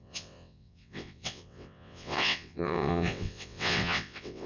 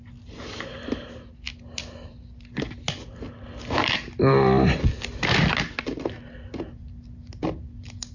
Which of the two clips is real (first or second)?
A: second